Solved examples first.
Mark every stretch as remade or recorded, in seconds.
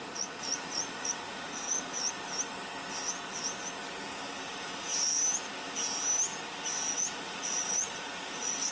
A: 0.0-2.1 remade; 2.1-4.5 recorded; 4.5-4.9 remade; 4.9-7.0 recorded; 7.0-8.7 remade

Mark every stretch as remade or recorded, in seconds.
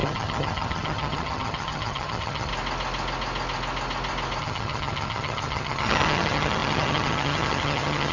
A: 0.0-2.5 remade; 2.5-4.4 recorded; 4.4-8.1 remade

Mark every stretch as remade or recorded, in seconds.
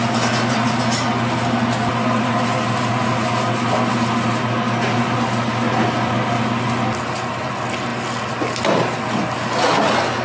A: 0.0-10.2 recorded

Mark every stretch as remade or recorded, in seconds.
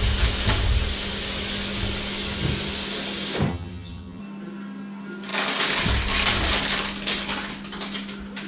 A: 0.0-3.5 recorded; 3.5-4.2 remade; 4.2-8.5 recorded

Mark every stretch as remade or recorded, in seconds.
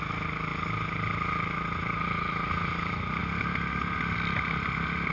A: 0.0-5.1 recorded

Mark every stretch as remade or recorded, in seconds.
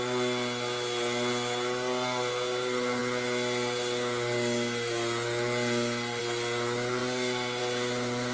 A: 0.0-8.3 recorded